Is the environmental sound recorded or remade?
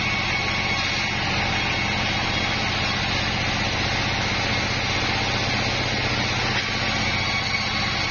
recorded